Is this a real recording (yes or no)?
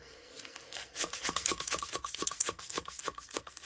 no